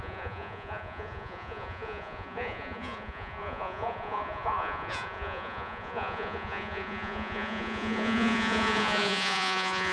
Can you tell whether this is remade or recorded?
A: remade